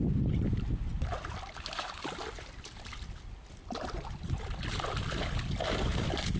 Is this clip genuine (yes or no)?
yes